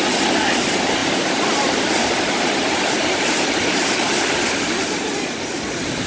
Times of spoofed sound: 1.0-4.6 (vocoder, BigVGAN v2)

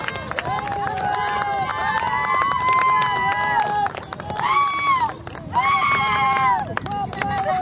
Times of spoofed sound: none

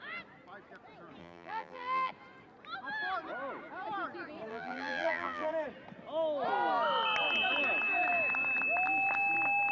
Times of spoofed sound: 1.2-2.1 (vocoder, BigVGAN v2); 4.5-5.5

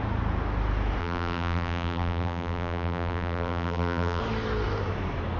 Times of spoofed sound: 1.0-4.2 (vocoder, BigVGAN v2)

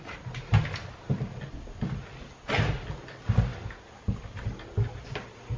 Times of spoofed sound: none